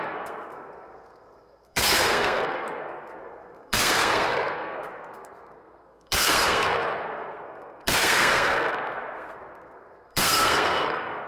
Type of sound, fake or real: fake